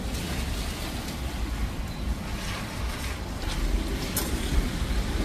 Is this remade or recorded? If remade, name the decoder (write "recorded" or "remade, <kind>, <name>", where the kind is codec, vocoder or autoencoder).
recorded